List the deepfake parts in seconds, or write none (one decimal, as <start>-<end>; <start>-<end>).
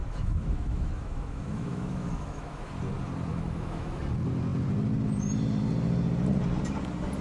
0.0-2.7; 3.3-4.0